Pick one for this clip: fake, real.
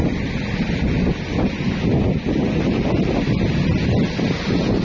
real